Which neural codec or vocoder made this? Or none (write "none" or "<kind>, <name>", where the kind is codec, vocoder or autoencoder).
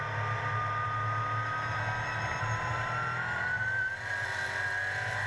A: none